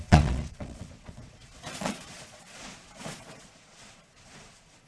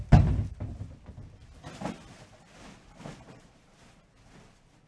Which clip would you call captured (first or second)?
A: second